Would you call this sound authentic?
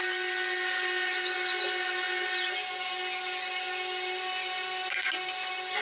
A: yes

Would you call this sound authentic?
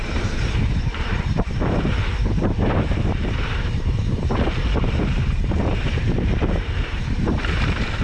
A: no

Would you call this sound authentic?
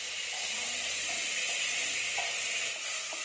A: yes